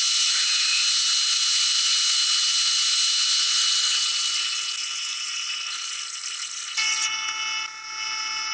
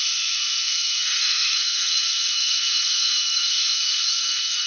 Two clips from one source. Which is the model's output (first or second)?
second